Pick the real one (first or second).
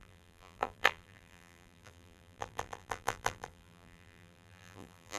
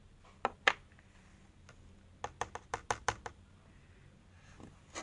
second